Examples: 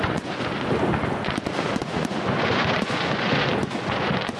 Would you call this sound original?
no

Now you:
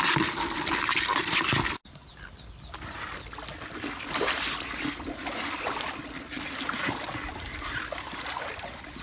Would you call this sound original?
yes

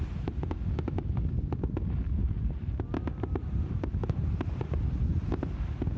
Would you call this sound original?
yes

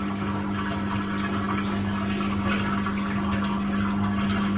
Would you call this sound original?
yes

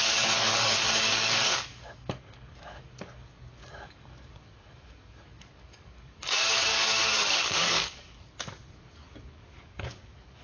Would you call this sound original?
no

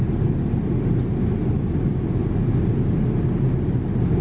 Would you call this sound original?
yes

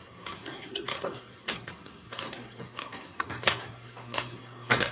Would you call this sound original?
no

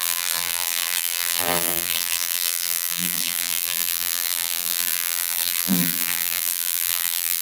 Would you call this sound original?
no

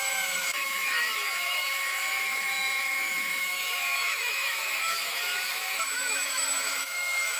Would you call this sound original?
no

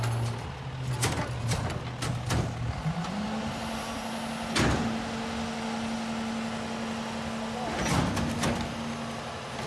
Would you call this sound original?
yes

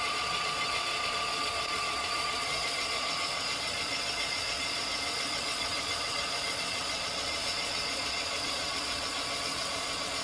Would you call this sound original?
no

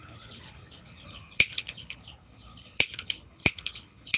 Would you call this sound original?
no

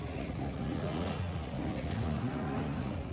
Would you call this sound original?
no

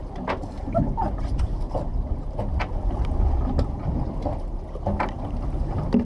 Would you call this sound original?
yes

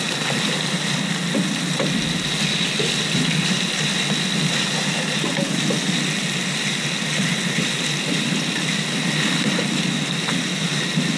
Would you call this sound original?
yes